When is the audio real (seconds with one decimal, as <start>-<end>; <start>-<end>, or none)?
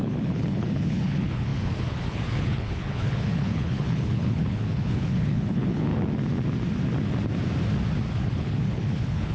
5.9-8.1